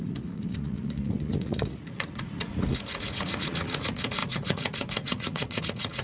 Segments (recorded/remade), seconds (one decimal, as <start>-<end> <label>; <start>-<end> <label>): 0.0-6.0 remade

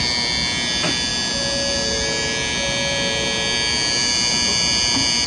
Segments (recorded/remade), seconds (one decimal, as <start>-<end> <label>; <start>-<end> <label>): 0.0-5.3 recorded

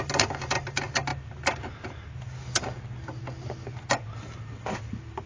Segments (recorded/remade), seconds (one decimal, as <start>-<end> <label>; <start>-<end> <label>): 0.0-5.3 recorded

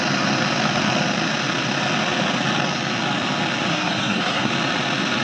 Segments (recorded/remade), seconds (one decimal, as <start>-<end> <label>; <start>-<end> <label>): 0.0-3.7 recorded; 3.7-4.5 remade; 4.5-5.2 recorded